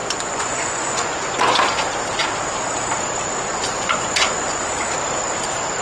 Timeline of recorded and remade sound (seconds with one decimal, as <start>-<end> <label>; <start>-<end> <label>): 0.0-1.6 remade; 1.6-3.5 recorded; 3.5-4.7 remade; 4.7-5.8 recorded